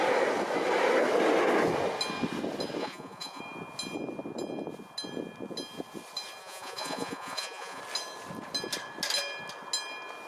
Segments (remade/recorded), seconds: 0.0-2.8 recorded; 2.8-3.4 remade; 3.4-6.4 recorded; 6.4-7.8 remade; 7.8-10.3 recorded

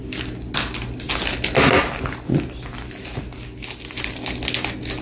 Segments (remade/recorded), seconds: 0.0-5.0 recorded

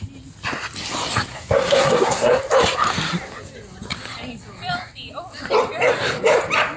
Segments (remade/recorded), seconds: 0.0-1.3 recorded; 1.3-2.4 remade; 2.4-6.8 recorded

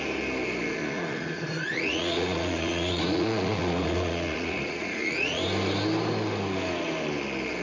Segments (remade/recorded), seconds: 0.0-0.8 recorded; 0.8-5.4 remade; 5.4-7.6 recorded

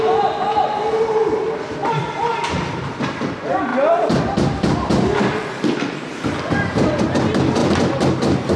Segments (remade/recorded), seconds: 0.0-1.8 recorded; 1.8-3.0 remade; 3.0-3.7 recorded; 3.7-7.0 remade; 7.0-8.6 recorded

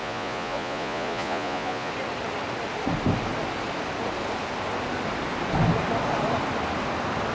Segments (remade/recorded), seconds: 0.0-1.9 remade; 1.9-7.3 recorded

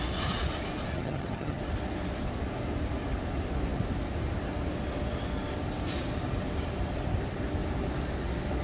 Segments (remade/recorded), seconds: 0.0-0.9 recorded; 0.9-1.6 remade; 1.6-8.6 recorded

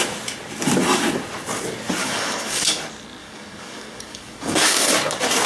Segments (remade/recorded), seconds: 0.0-2.0 recorded; 2.0-2.8 remade; 2.8-3.2 recorded; 3.2-4.9 remade; 4.9-5.5 recorded